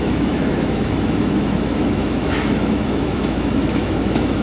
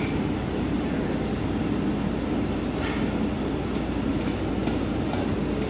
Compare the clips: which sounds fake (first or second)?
first